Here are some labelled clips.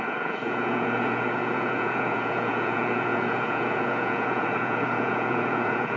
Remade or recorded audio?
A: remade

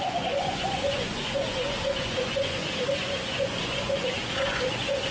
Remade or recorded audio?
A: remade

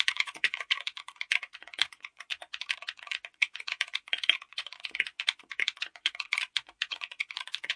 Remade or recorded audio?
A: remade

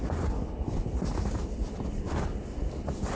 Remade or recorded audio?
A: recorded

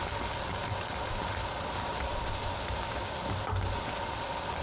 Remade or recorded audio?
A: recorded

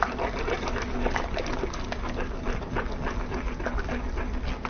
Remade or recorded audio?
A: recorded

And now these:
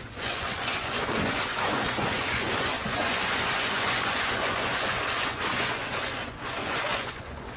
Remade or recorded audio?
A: remade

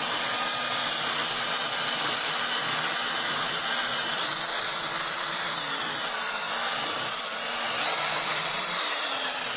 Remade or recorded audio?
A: recorded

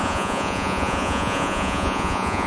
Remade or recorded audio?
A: remade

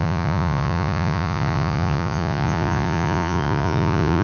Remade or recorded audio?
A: remade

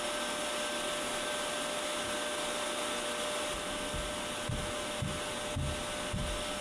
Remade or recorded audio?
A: recorded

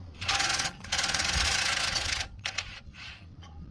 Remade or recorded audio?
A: remade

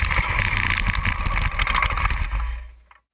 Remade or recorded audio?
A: recorded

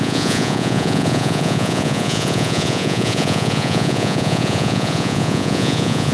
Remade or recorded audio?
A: remade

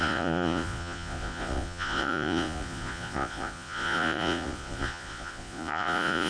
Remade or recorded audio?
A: remade